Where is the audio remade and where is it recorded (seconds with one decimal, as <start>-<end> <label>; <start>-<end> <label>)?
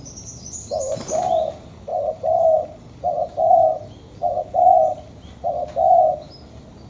0.0-6.9 recorded